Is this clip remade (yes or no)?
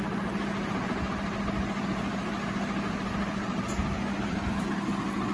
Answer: no